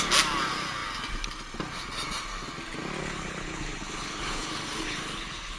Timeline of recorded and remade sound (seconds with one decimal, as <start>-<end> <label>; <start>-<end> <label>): 0.0-3.0 recorded; 3.0-5.6 remade